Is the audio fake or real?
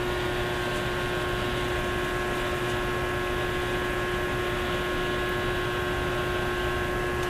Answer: real